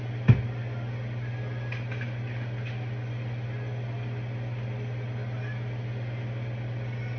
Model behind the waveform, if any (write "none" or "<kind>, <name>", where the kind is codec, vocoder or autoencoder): none